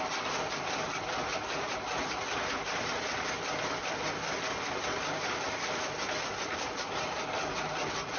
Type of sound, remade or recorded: remade